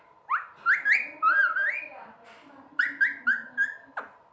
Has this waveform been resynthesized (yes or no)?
no